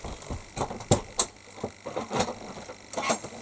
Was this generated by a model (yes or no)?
no